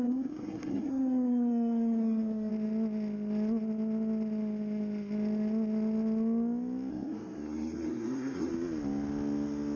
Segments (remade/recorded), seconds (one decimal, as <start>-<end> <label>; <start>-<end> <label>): 0.0-2.5 remade; 2.5-6.9 recorded; 6.9-8.5 remade; 8.5-9.8 recorded